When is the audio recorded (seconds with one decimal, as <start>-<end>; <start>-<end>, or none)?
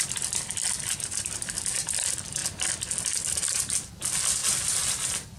0.0-5.4